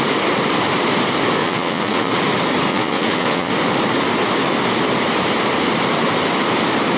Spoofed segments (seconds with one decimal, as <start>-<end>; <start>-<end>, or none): 1.4-2.1; 2.7-3.5